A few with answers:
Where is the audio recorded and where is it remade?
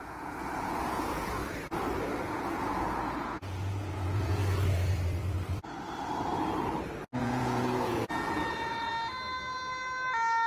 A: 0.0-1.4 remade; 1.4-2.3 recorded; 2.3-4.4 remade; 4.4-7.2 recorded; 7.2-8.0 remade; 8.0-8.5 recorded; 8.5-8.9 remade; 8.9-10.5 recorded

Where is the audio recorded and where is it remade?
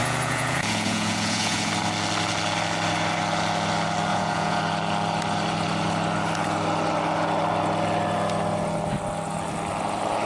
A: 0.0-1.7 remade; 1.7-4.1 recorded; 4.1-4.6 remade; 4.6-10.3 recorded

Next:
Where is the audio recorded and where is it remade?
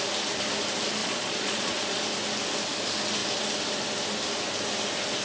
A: 0.0-1.0 recorded; 1.0-2.0 remade; 2.0-5.2 recorded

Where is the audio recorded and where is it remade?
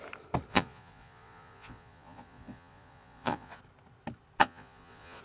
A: 0.0-0.5 recorded; 0.5-3.6 remade; 3.6-4.4 recorded; 4.4-5.2 remade